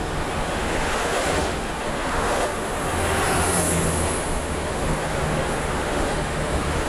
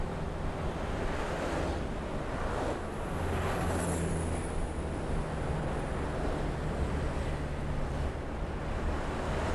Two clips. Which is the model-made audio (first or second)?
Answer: first